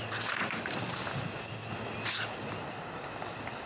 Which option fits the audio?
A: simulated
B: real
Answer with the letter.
B